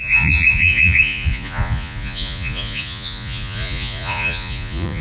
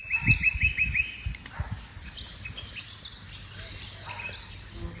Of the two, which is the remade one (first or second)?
first